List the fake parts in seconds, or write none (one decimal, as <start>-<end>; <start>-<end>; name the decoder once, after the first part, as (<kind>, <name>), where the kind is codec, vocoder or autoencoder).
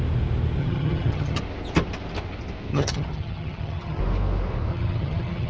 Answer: 0.6-1.4 (vocoder, HiFi-GAN); 2.7-4.0; 4.7-5.5